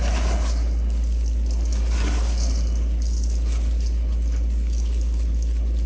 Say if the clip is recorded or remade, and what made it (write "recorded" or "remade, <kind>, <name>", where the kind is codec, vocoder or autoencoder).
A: recorded